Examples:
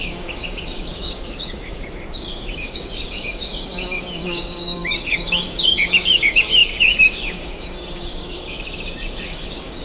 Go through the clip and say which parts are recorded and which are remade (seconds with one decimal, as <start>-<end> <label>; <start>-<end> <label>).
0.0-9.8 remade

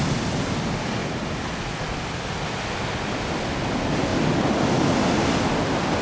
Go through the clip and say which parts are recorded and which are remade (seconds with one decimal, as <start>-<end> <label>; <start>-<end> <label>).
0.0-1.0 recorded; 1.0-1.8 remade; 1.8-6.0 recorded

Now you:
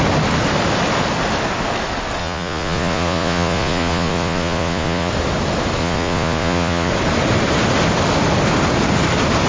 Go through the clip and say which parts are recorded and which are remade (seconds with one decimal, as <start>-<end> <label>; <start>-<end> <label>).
0.0-2.2 recorded; 2.2-5.1 remade; 5.1-5.8 recorded; 5.8-6.9 remade; 6.9-9.5 recorded